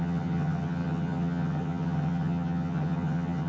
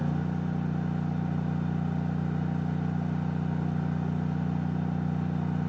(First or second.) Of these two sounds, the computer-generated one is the first